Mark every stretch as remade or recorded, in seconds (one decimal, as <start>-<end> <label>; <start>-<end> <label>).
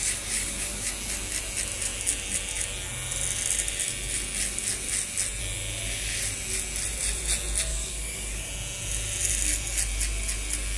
0.0-0.9 remade; 0.9-7.7 recorded; 7.7-8.5 remade; 8.5-10.8 recorded